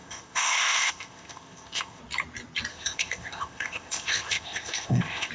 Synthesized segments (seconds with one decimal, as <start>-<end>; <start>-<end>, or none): 0.0-2.0; 2.7-5.3